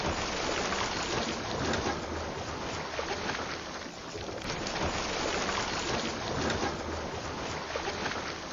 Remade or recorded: recorded